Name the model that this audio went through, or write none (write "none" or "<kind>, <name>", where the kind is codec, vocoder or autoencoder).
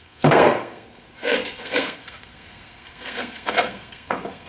codec, SNAC